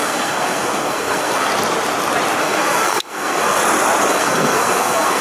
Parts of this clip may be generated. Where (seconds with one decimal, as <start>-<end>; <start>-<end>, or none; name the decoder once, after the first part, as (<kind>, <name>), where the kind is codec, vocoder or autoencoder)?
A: 0.0-1.5 (codec, SNAC); 2.4-3.6; 4.1-5.2